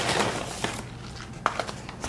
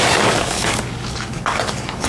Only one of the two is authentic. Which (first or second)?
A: first